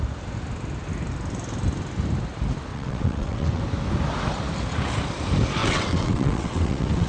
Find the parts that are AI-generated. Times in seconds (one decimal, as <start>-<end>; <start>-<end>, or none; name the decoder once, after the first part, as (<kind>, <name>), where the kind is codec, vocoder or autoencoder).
2.7-3.6 (vocoder, WaveNeXt); 5.6-7.1